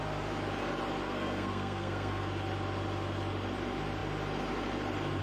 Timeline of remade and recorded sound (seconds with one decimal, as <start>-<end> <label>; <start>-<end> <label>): 0.0-1.0 recorded; 1.0-2.2 remade; 2.2-5.2 recorded